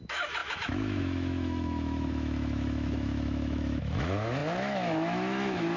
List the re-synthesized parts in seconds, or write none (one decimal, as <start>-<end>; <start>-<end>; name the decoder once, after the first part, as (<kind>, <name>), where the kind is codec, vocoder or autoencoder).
0.0-5.8 (autoencoder, DAC-VAE)